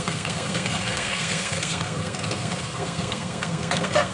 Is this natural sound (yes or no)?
no